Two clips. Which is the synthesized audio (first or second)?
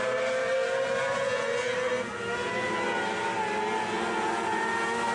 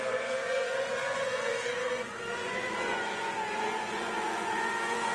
second